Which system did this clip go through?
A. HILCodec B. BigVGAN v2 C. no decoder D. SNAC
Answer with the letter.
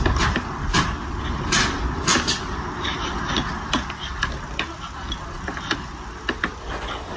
C